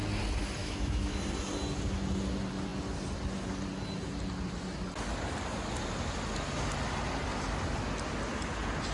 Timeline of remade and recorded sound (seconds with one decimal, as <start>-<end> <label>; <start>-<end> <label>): 0.0-0.6 recorded; 0.6-1.2 remade; 1.2-8.9 recorded